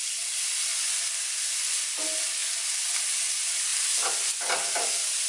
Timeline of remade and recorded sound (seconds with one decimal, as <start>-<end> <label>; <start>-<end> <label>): 0.0-5.3 recorded